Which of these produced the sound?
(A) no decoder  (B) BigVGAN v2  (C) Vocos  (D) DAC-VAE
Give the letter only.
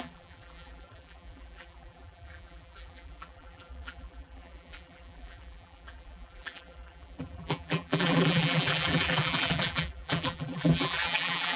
B